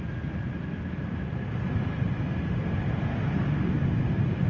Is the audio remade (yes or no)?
no